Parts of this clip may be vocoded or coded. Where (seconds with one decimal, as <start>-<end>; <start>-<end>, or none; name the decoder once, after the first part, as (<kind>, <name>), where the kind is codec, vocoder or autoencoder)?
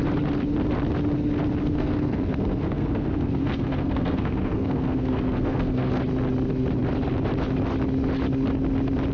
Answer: 1.6-5.9 (codec, SNAC)